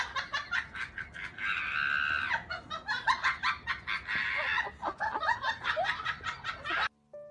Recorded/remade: recorded